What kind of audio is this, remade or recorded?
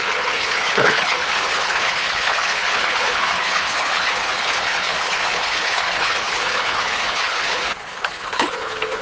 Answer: remade